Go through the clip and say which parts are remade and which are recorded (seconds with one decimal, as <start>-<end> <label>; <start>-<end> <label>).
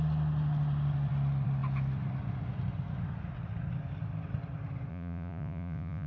0.0-4.9 recorded; 4.9-6.1 remade